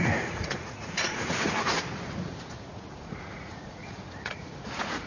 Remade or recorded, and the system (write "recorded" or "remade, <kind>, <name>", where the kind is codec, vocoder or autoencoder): remade, vocoder, Vocos